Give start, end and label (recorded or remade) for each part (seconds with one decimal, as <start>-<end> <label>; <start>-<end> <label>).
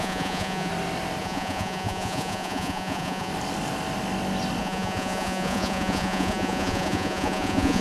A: 0.0-0.7 remade; 0.7-1.2 recorded; 1.2-3.3 remade; 3.3-4.6 recorded; 4.6-7.8 remade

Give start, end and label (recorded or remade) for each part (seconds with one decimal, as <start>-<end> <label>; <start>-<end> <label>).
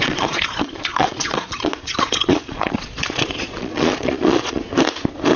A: 0.0-4.6 remade; 4.6-5.4 recorded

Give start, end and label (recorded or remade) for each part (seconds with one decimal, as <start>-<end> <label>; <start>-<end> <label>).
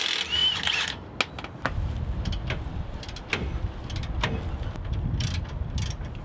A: 0.0-6.2 recorded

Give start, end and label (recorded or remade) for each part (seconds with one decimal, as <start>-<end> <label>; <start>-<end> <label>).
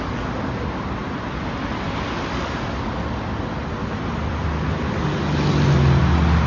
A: 0.0-6.5 recorded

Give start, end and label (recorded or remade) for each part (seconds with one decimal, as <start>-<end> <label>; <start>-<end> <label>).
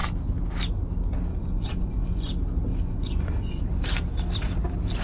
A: 0.0-1.3 recorded; 1.3-2.3 remade; 2.3-2.7 recorded; 2.7-3.6 remade; 3.6-5.0 recorded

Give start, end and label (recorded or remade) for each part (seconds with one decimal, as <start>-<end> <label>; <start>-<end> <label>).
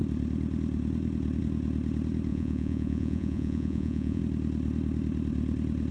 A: 0.0-2.3 recorded; 2.3-4.2 remade; 4.2-5.9 recorded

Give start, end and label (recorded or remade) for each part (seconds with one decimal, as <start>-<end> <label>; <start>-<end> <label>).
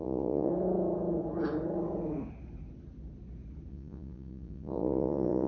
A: 0.0-0.5 remade; 0.5-3.7 recorded; 3.7-5.5 remade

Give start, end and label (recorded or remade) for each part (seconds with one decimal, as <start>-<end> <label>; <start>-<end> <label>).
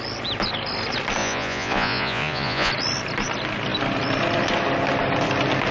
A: 0.0-1.2 recorded; 1.2-2.7 remade; 2.7-5.7 recorded